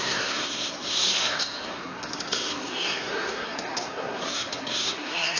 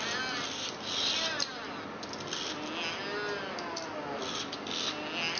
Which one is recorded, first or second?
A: second